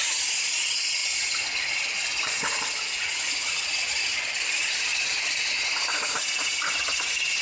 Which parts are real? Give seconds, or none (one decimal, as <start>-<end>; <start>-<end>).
0.0-7.4